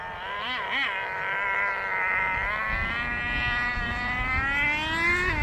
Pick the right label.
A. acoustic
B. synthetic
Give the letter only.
A